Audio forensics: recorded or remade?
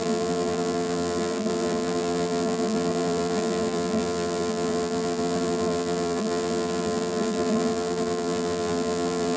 remade